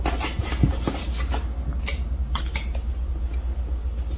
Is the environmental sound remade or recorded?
recorded